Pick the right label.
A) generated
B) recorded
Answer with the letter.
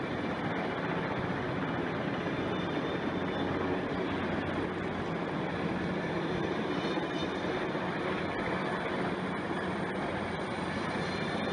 B